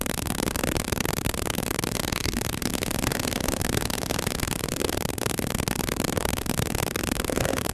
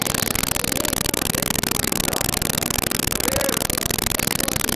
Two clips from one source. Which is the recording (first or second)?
second